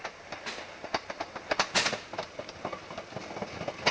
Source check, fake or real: real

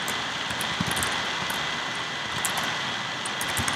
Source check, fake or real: real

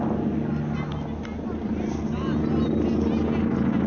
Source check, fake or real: real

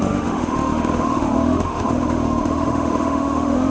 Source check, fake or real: fake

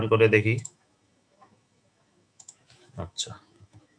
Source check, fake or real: fake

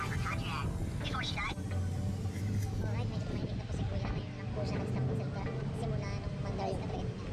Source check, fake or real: real